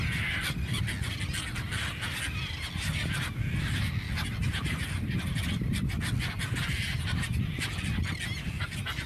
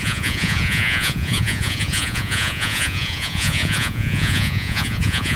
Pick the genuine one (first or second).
first